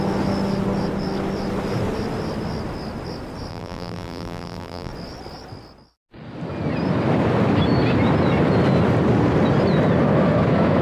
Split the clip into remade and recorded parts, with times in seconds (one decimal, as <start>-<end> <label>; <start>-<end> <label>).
0.0-3.5 recorded; 3.5-4.9 remade; 4.9-10.8 recorded